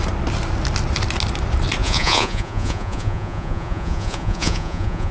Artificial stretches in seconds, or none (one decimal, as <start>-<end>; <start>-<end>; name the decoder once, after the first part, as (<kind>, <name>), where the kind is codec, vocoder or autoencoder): 1.8-5.1 (vocoder, Vocos)